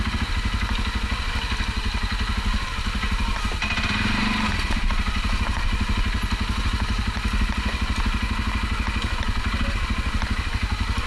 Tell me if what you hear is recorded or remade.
recorded